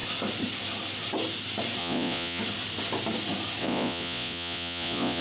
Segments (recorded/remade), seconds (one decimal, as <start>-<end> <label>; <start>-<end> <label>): 0.0-1.8 recorded; 1.8-2.4 remade; 2.4-3.6 recorded; 3.6-5.2 remade

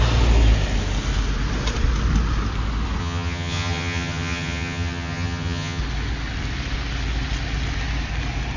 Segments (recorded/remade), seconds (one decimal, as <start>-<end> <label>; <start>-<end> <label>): 0.0-3.0 recorded; 3.0-5.8 remade; 5.8-8.6 recorded

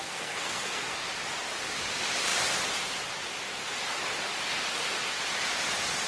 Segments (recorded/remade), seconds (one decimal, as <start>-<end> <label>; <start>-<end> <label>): 0.0-1.1 remade; 1.1-6.1 recorded